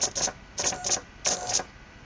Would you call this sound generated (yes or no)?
no